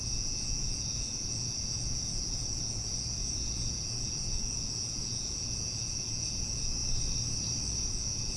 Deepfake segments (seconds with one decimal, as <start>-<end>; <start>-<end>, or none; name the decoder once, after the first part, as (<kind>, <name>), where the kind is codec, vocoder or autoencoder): 0.0-6.8 (vocoder, Vocos); 7.9-8.4

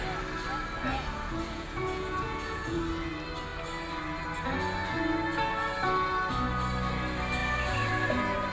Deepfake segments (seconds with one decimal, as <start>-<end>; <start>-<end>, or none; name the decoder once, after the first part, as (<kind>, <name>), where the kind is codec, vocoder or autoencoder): 0.9-2.8 (vocoder, Vocos)

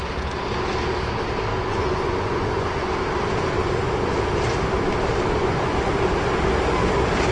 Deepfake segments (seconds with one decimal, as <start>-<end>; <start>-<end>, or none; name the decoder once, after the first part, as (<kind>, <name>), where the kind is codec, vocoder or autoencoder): 1.5-2.9 (vocoder, Vocos); 5.4-5.9